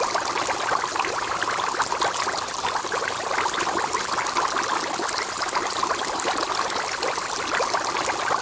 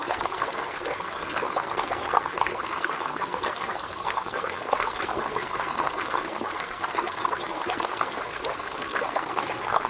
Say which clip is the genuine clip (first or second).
first